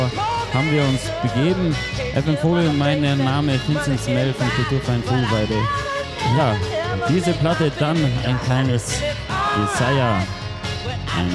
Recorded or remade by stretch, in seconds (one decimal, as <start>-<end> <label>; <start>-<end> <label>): 0.0-5.7 recorded; 5.7-6.4 remade; 6.4-8.2 recorded; 8.2-9.2 remade; 9.2-11.3 recorded